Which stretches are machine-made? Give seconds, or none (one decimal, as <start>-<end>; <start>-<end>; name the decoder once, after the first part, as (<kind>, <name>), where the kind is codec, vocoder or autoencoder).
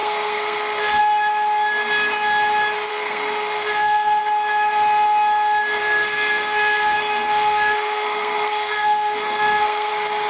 0.0-1.0 (codec, SNAC); 2.9-4.2; 5.8-9.9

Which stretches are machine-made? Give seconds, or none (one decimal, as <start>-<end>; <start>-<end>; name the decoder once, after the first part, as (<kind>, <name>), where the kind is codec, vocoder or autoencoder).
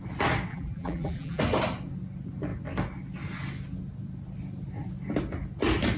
0.5-1.4 (vocoder, BigVGAN v2)